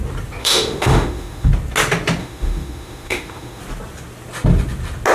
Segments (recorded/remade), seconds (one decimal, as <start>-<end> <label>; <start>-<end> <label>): 0.0-0.4 recorded; 0.4-1.5 remade; 1.5-2.2 recorded; 2.2-3.6 remade; 3.6-5.1 recorded